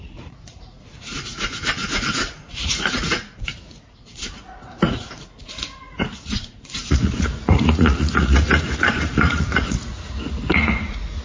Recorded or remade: remade